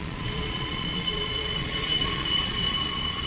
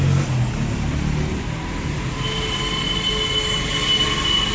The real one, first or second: second